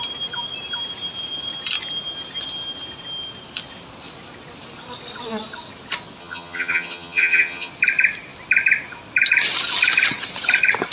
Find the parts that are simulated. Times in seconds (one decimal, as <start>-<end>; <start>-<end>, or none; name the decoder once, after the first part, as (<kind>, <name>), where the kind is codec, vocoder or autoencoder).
6.2-7.7 (vocoder, HiFi-GAN)